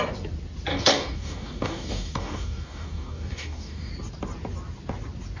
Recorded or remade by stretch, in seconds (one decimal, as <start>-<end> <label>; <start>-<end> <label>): 0.0-0.7 recorded; 0.7-3.9 remade; 3.9-5.4 recorded